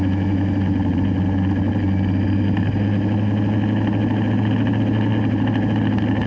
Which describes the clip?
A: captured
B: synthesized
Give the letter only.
A